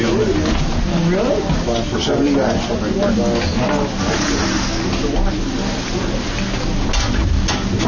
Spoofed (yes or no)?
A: no